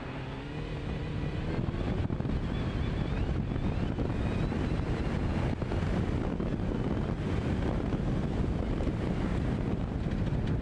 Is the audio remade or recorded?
recorded